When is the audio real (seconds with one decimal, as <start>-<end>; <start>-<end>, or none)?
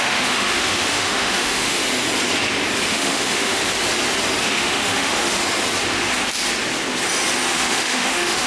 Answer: 1.8-2.9; 3.6-4.4; 5.4-7.5